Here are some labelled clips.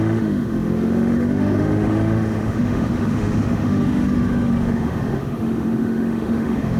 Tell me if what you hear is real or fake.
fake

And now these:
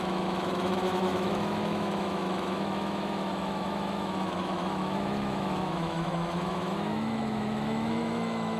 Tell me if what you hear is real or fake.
fake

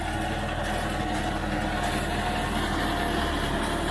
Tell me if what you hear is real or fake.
real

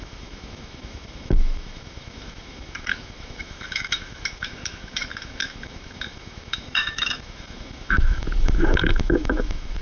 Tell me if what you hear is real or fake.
fake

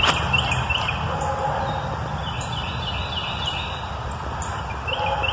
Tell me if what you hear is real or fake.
real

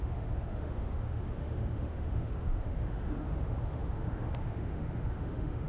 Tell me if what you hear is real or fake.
fake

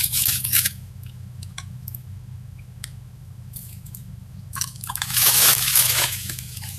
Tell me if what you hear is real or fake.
fake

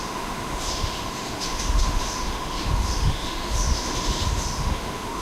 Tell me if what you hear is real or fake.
fake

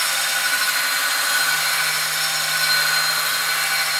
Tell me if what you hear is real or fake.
real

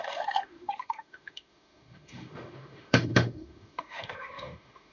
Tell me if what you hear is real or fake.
fake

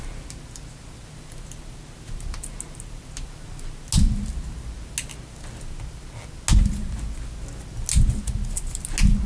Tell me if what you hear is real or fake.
real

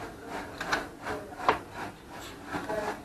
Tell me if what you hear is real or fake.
real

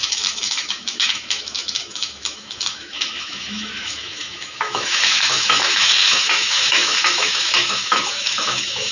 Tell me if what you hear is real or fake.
fake